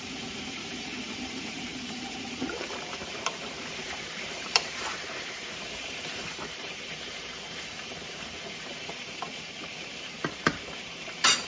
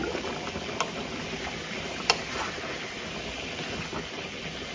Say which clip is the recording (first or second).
second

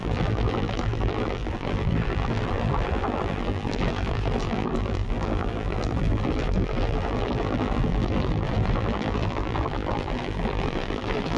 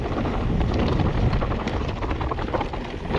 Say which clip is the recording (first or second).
second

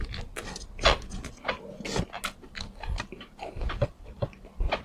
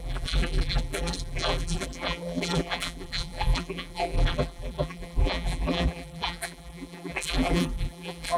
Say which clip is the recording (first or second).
first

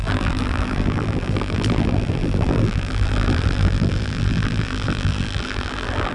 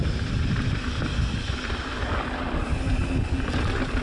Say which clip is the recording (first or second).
second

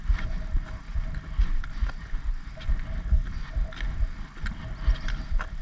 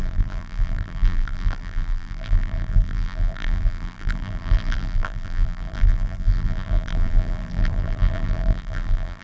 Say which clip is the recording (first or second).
first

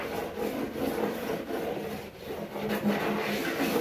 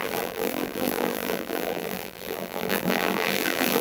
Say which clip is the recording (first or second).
first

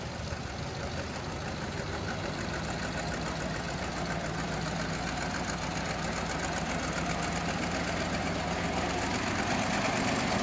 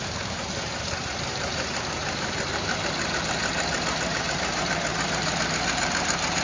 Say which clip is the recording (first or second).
first